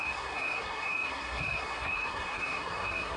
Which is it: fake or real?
fake